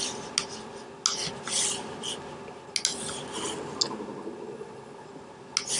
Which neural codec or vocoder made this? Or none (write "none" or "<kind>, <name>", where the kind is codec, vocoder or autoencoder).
none